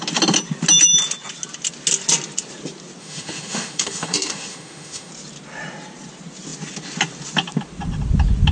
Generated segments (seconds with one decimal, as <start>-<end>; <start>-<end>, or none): 3.0-5.1